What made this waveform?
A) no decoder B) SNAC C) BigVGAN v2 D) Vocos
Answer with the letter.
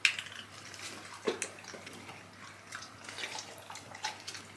A